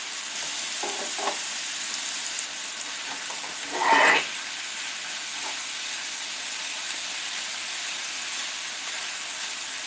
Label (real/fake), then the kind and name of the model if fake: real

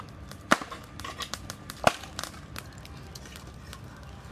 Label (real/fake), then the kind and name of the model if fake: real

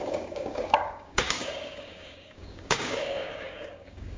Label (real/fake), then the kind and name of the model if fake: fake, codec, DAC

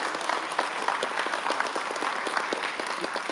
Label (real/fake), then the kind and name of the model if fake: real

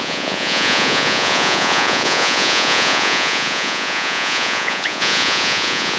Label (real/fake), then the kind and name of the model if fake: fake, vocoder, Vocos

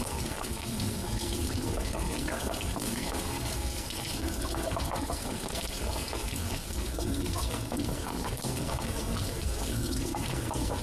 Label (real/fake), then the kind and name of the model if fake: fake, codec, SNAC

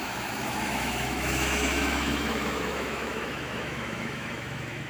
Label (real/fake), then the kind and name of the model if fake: fake, autoencoder, DAC-VAE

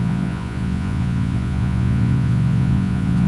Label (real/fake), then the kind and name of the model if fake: fake, vocoder, Vocos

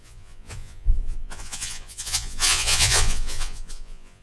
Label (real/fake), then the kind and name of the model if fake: fake, vocoder, Vocos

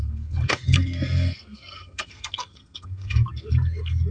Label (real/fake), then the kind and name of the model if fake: fake, codec, SNAC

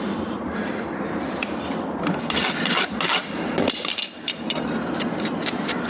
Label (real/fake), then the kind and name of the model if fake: fake, vocoder, BigVGAN v2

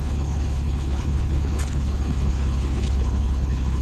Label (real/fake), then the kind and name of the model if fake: fake, codec, HILCodec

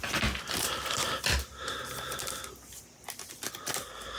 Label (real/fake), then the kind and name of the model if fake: real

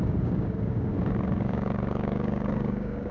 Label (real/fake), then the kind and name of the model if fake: fake, codec, DAC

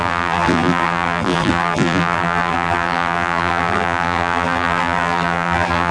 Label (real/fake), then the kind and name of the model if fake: fake, vocoder, BigVGAN v2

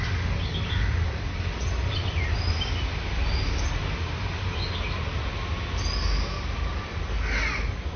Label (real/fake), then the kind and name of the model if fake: real